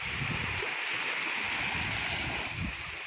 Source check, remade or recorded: recorded